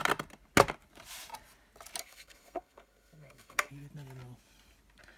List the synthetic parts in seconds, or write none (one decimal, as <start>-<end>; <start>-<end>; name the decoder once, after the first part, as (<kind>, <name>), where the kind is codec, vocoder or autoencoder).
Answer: 2.0-3.7 (codec, SNAC)